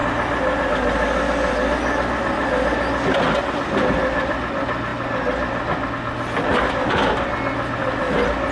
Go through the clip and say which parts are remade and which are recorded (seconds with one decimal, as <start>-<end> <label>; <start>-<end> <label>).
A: 0.0-8.5 recorded